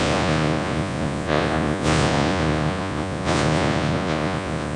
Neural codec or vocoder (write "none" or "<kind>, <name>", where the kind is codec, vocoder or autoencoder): vocoder, Vocos